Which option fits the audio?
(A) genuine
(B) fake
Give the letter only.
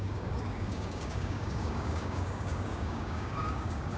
B